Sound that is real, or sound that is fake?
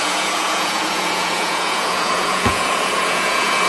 fake